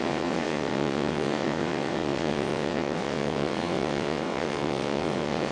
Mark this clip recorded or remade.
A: remade